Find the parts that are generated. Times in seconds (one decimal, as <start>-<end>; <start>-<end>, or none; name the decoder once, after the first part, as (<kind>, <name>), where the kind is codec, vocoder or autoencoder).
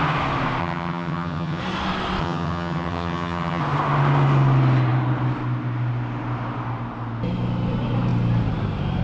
0.6-1.6 (vocoder, HiFi-GAN); 2.2-3.6